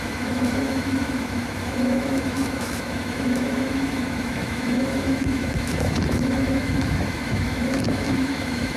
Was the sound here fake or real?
fake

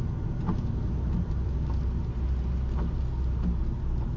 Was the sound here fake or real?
real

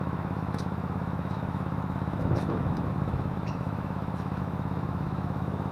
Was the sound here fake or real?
fake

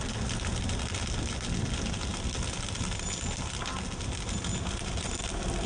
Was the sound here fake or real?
real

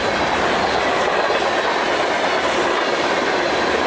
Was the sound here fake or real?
real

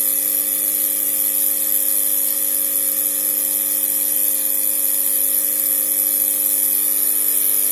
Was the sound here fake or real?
real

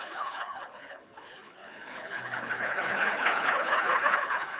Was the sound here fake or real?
fake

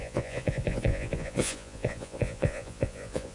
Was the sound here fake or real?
fake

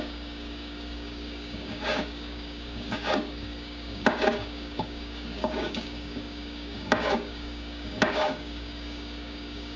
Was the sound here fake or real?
fake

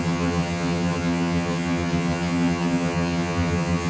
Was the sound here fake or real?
fake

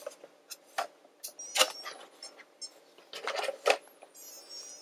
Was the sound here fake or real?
real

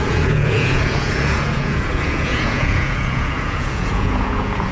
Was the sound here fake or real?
fake